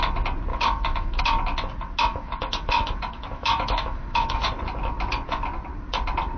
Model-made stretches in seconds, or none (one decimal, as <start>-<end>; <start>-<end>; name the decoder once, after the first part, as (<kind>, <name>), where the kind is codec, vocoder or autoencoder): 0.5-1.2 (autoencoder, DAC-VAE); 2.1-4.5